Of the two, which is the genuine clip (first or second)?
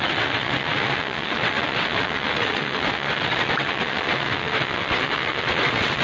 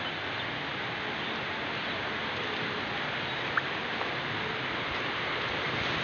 second